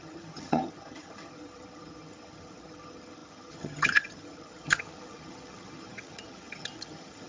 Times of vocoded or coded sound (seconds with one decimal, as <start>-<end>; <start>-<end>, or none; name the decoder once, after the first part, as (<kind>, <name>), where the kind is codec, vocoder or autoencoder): 0.0-7.3 (vocoder, HiFi-GAN)